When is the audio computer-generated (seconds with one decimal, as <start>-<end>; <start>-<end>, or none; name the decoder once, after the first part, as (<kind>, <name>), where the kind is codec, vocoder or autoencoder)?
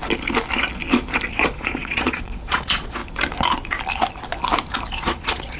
1.3-3.0 (vocoder, Vocos); 4.9-5.6